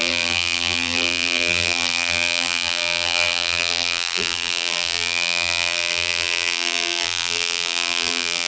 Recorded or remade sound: remade